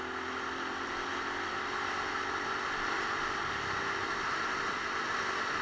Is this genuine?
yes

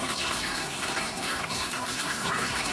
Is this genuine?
no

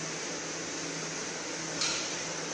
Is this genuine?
yes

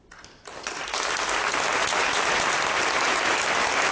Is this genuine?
yes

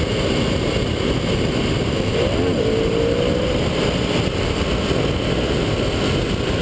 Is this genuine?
yes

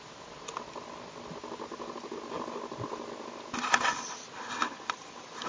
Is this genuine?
yes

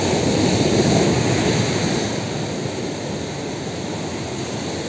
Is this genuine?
yes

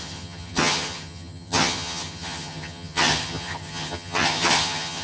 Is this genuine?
no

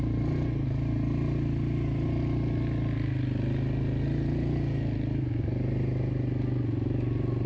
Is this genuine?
yes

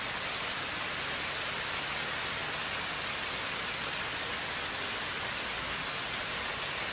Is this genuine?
yes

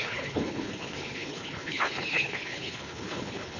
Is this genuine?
no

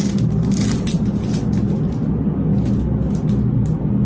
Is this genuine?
yes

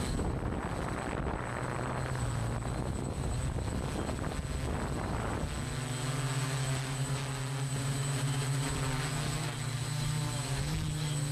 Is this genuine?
yes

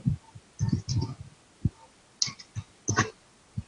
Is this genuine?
yes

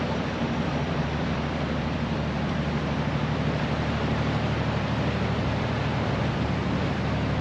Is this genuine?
no